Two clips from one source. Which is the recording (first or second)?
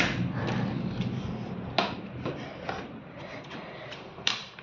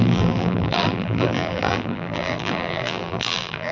first